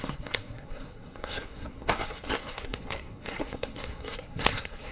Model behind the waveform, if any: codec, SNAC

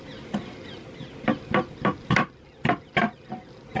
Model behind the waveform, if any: none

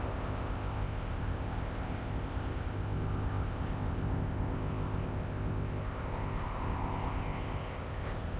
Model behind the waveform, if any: codec, ZipCodec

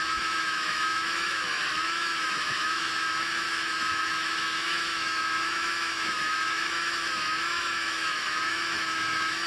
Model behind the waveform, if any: autoencoder, DAC-VAE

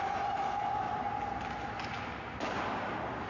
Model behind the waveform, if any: none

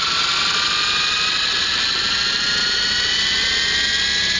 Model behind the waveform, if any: none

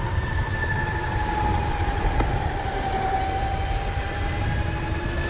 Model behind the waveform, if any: vocoder, BigVGAN v2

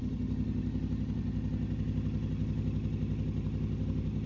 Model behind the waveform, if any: none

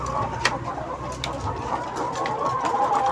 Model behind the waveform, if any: none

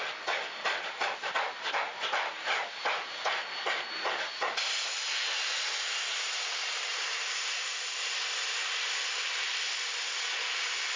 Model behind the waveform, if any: none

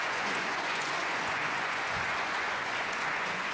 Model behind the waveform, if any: vocoder, Vocos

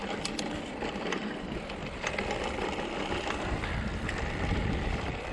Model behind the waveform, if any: none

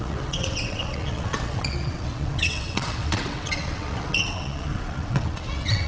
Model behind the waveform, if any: vocoder, WaveNeXt